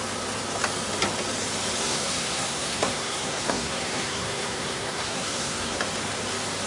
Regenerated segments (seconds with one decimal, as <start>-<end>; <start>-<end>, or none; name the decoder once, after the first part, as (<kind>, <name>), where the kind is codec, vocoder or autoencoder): 1.8-5.8 (codec, SNAC)